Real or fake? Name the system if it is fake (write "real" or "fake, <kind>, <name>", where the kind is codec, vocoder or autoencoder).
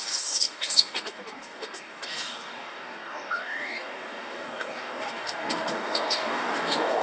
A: fake, codec, DAC